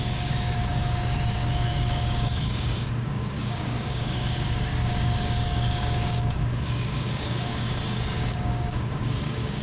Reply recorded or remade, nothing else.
remade